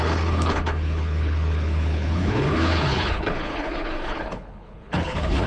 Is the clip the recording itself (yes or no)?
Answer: no